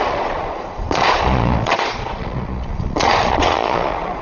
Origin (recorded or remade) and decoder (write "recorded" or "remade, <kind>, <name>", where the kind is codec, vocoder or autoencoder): remade, vocoder, Vocos